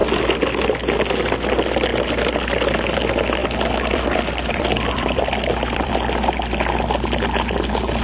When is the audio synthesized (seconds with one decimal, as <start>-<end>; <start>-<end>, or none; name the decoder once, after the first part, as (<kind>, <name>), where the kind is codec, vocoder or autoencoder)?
3.4-5.9 (vocoder, BigVGAN v2)